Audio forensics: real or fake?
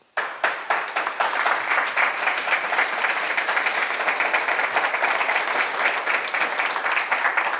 real